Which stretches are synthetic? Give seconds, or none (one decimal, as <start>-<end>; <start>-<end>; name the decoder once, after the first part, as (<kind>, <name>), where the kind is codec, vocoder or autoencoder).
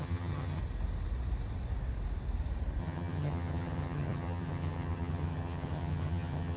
0.0-0.6 (vocoder, HiFi-GAN); 2.8-6.6